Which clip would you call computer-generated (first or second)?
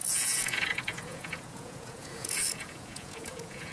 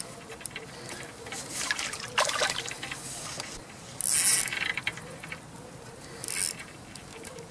first